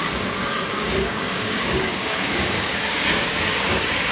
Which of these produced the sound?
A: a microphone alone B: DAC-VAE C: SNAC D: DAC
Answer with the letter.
D